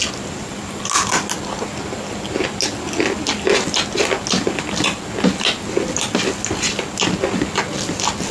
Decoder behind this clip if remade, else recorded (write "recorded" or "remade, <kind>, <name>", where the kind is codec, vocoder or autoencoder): recorded